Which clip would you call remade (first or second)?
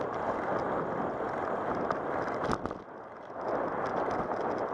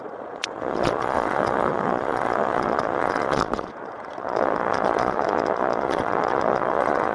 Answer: second